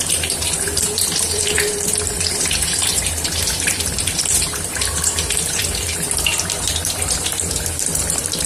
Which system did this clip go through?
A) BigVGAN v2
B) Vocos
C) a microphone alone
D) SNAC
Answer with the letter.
A